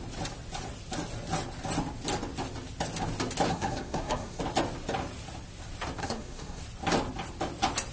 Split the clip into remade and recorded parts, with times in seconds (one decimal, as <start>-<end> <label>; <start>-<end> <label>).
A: 0.0-3.5 recorded; 3.5-4.4 remade; 4.4-6.0 recorded; 6.0-6.6 remade; 6.6-7.9 recorded